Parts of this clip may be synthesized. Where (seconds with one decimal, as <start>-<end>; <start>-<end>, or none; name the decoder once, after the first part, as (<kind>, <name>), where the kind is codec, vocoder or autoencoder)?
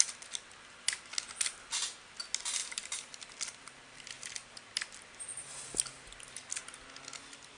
none